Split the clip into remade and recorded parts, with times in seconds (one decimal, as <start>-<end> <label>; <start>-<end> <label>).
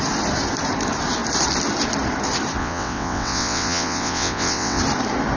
0.0-2.6 recorded; 2.6-4.8 remade; 4.8-5.4 recorded